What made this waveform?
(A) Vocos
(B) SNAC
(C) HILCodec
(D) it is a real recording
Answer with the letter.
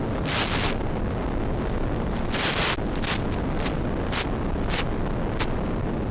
D